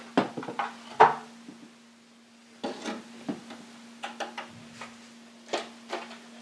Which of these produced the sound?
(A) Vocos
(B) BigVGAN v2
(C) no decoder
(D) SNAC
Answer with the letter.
C